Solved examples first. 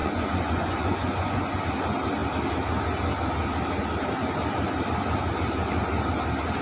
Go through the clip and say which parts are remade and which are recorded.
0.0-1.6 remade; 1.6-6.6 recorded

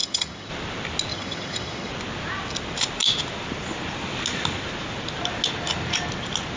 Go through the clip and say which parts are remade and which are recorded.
0.0-0.5 remade; 0.5-1.1 recorded; 1.1-1.9 remade; 1.9-6.6 recorded